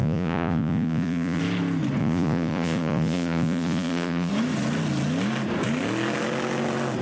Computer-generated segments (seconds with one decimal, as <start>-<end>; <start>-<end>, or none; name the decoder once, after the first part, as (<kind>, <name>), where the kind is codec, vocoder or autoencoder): 0.0-1.4 (vocoder, Vocos); 2.0-4.3